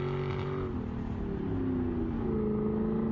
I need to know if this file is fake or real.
real